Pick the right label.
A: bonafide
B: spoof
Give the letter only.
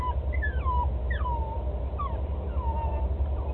A